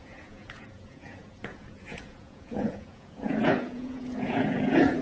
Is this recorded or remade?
remade